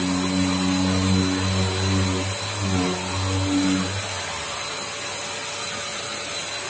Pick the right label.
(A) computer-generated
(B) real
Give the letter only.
B